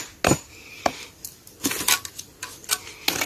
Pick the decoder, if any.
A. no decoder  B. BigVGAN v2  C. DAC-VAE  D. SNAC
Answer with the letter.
A